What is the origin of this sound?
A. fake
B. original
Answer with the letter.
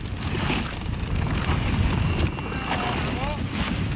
B